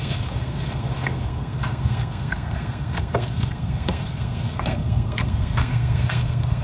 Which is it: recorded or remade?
remade